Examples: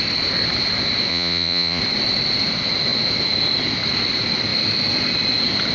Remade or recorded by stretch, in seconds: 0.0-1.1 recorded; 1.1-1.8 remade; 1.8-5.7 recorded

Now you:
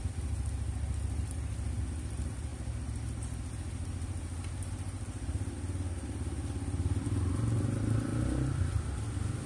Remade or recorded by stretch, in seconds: 0.0-9.5 recorded

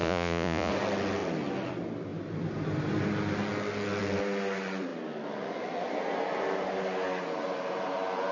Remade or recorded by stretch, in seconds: 0.0-0.7 remade; 0.7-8.3 recorded

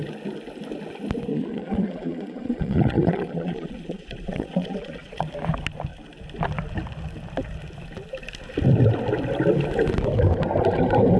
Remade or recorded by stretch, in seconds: 0.0-1.3 recorded; 1.3-5.3 remade; 5.3-11.2 recorded